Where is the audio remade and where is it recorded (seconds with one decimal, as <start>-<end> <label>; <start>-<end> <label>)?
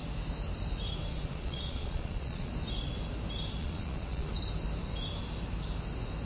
0.0-1.1 recorded; 1.1-2.5 remade; 2.5-3.6 recorded; 3.6-4.3 remade; 4.3-6.3 recorded